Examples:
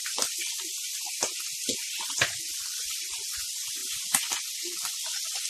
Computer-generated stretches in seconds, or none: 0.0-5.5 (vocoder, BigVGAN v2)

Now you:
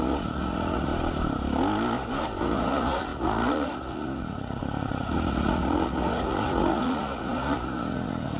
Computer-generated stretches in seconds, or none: 0.0-0.9 (vocoder, Vocos); 2.4-8.4